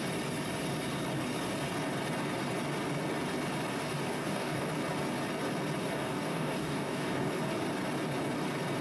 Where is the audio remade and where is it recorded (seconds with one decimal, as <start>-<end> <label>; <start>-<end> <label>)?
0.0-4.1 recorded; 4.1-4.6 remade; 4.6-5.8 recorded; 5.8-7.3 remade; 7.3-8.8 recorded